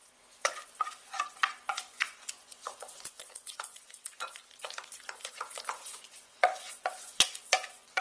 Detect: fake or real fake